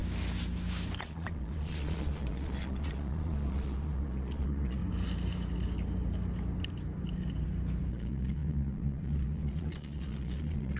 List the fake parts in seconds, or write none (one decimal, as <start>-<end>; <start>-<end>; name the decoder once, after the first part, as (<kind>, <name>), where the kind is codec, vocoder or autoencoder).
1.0-4.8 (vocoder, Vocos); 7.9-10.8